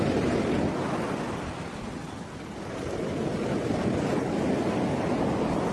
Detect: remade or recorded recorded